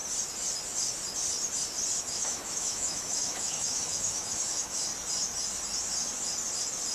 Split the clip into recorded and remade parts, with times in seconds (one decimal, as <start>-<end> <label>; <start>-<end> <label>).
0.0-2.0 recorded; 2.0-4.9 remade; 4.9-6.9 recorded